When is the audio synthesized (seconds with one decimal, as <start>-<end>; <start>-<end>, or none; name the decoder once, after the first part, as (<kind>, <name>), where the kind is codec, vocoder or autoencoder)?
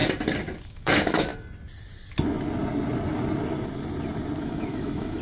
0.6-1.3 (autoencoder, DAC-VAE); 4.4-5.2